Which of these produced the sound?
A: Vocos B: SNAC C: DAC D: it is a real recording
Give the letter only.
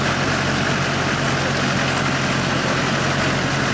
D